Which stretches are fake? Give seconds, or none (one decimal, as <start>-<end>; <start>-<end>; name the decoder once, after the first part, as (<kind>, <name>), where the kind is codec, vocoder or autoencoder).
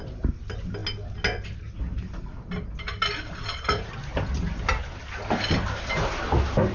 none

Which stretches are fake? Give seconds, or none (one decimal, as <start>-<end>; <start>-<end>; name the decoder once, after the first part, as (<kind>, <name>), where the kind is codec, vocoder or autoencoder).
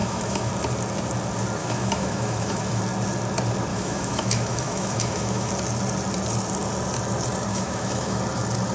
0.0-0.5 (autoencoder, DAC-VAE); 1.6-2.8; 3.7-5.5; 7.5-8.2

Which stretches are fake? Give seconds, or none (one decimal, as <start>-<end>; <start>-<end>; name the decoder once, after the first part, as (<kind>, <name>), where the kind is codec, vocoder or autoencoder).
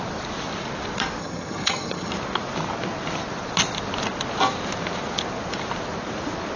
1.2-2.1 (vocoder, HiFi-GAN)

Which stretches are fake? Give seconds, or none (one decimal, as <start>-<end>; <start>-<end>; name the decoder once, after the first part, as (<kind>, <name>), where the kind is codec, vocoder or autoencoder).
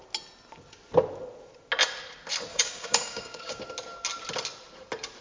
2.5-3.6 (codec, DAC)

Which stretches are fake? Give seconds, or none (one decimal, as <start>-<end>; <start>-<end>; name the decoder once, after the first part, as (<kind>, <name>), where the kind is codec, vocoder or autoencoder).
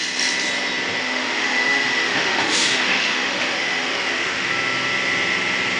1.0-4.5 (autoencoder, DAC-VAE)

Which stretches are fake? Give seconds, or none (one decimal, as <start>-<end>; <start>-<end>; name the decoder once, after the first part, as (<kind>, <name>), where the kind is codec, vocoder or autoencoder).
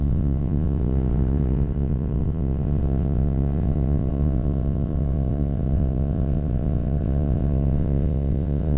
0.0-8.8 (vocoder, WaveNeXt)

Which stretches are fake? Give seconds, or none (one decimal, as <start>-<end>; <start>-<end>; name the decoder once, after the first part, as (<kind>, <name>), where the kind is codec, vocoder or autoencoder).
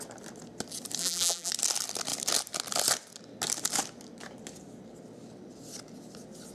1.0-1.5 (vocoder, BigVGAN v2)